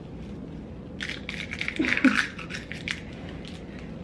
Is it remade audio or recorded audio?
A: recorded